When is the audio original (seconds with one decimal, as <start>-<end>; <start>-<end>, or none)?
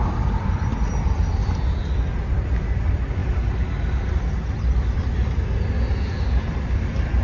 3.2-6.3